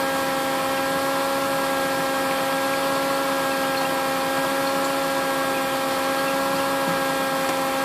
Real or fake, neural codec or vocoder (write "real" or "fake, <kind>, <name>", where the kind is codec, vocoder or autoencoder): real